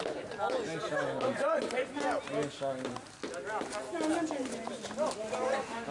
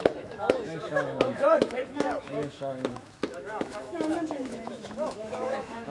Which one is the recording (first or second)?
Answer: first